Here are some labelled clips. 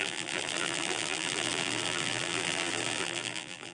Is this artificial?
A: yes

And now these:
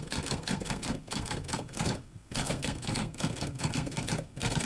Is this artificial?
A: yes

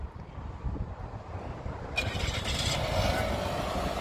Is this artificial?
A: yes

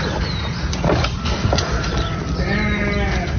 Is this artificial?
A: no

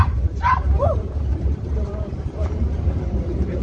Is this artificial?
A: yes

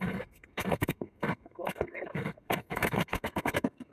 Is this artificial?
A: yes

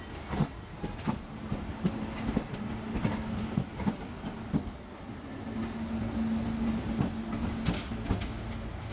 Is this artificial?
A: no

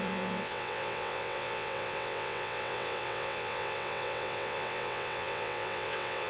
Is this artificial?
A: yes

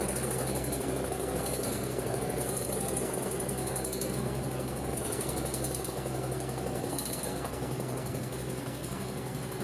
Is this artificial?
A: yes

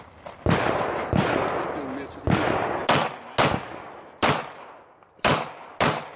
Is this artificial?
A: no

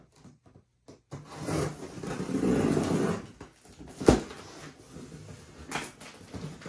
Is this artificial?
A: no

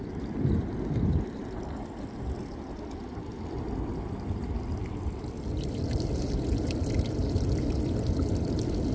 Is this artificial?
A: no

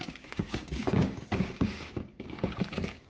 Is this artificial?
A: yes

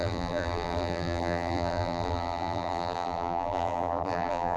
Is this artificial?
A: yes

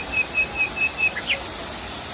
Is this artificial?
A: no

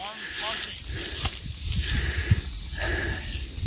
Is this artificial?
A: no